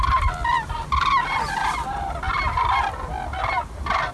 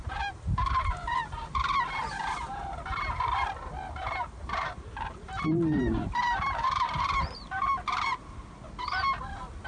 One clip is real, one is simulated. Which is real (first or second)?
first